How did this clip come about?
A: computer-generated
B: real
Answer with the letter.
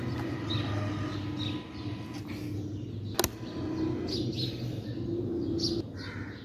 B